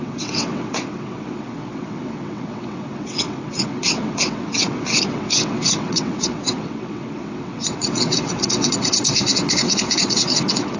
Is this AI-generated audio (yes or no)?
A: yes